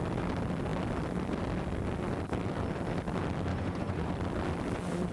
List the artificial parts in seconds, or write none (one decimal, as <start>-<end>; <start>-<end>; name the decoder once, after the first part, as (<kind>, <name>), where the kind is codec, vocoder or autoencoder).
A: 3.5-4.1 (vocoder, Vocos)